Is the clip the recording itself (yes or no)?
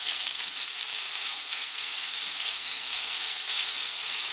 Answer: no